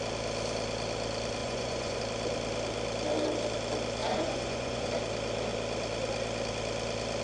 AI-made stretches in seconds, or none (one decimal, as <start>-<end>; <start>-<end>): 1.4-2.0; 4.0-4.9